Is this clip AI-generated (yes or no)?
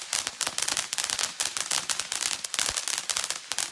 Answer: no